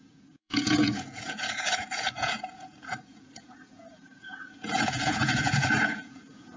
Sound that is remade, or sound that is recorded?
remade